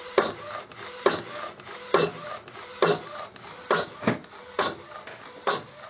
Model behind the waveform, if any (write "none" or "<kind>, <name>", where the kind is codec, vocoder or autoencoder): none